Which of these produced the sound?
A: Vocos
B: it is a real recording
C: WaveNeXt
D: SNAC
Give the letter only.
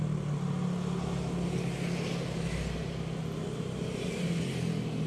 B